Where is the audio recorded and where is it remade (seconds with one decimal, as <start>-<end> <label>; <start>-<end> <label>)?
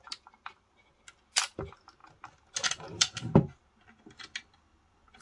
0.0-5.2 recorded